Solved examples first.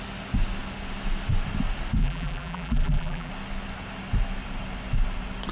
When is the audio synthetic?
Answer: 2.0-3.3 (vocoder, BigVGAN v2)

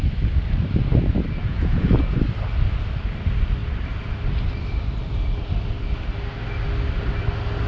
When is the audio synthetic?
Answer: 1.4-2.0 (vocoder, Vocos)

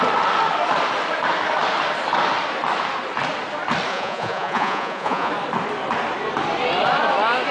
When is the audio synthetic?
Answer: 3.9-5.3 (vocoder, Vocos)

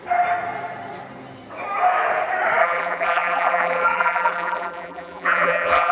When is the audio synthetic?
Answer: 2.6-5.9 (vocoder, BigVGAN v2)